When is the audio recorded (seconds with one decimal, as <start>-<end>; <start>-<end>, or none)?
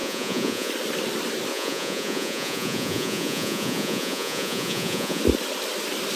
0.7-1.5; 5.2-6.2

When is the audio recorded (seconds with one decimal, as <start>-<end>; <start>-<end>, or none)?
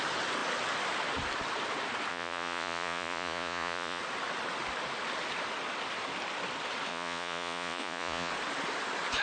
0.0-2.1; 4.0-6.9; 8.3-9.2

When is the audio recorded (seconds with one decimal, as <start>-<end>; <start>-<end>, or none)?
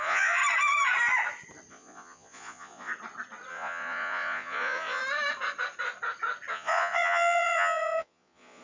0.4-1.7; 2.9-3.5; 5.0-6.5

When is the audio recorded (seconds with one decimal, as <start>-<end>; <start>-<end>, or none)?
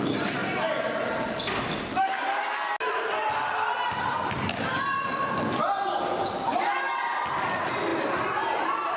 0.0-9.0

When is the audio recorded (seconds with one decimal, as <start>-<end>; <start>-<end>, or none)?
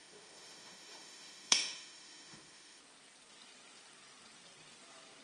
2.8-5.2